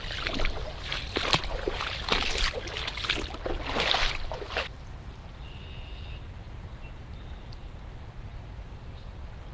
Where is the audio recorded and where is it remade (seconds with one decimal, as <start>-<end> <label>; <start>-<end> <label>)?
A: 0.0-4.9 recorded; 4.9-7.5 remade; 7.5-9.5 recorded